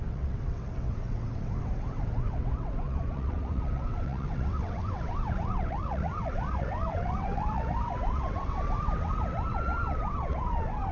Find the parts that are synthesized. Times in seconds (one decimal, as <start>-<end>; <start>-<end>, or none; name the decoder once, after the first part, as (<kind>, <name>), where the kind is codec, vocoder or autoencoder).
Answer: 0.0-10.9 (vocoder, WaveNeXt)